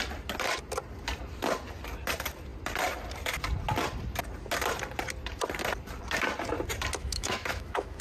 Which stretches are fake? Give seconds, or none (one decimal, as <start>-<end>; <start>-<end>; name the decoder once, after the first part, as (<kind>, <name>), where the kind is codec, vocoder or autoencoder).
7.0-8.0 (autoencoder, DAC-VAE)

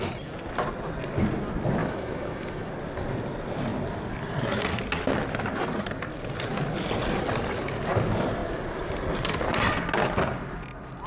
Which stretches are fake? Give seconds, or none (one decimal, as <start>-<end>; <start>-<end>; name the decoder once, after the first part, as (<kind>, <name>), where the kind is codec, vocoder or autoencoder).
1.8-2.7 (autoencoder, DAC-VAE)

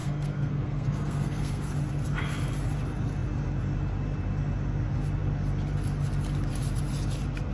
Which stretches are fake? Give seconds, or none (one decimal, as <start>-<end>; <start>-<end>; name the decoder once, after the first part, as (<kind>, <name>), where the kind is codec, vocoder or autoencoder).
0.0-1.6 (codec, SNAC)